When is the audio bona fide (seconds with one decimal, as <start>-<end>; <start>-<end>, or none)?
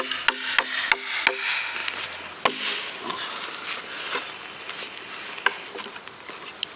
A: 0.0-6.8